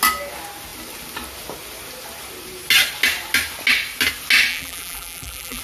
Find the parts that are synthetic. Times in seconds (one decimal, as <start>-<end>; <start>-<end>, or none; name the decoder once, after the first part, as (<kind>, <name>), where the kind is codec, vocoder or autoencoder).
4.5-5.6 (vocoder, BigVGAN v2)